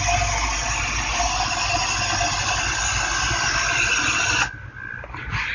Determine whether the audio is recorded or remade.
recorded